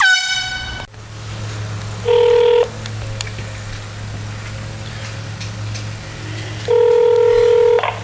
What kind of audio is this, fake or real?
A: real